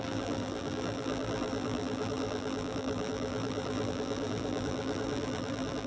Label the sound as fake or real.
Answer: fake